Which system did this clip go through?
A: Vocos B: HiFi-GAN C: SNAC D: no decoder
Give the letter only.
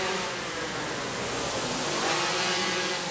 A